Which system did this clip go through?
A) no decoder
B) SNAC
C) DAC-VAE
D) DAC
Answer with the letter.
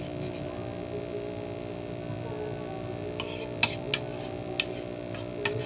A